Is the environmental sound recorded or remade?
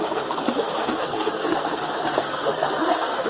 remade